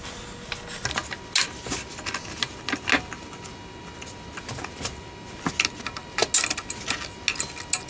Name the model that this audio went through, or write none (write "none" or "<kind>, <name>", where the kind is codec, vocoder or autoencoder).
none